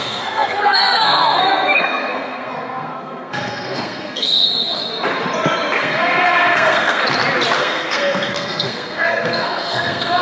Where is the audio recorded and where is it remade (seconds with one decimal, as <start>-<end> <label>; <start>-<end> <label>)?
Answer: 0.0-4.8 remade; 4.8-5.8 recorded; 5.8-7.0 remade; 7.0-7.6 recorded; 7.6-10.2 remade